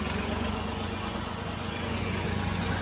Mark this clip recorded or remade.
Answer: remade